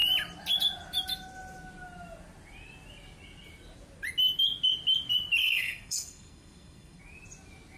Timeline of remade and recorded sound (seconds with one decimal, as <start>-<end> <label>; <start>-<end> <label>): 0.0-5.4 recorded; 5.4-7.0 remade; 7.0-7.8 recorded